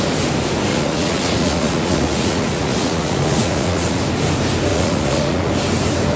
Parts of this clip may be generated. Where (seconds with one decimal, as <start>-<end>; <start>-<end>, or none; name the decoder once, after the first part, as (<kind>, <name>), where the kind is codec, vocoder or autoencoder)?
0.7-4.0 (vocoder, Vocos); 4.7-5.5